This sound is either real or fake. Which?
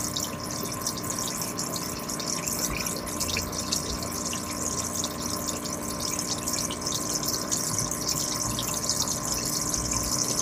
real